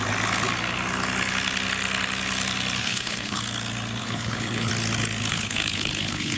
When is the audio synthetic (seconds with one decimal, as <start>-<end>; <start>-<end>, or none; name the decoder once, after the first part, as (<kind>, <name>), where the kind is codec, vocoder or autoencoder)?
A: 2.8-3.4 (codec, HILCodec); 4.0-4.7; 5.3-6.4